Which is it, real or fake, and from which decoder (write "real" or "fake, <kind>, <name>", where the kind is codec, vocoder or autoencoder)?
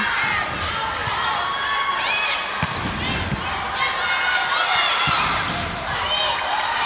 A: real